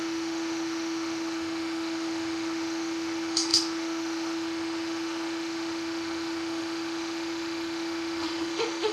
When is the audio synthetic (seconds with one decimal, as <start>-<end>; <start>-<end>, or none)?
0.0-8.9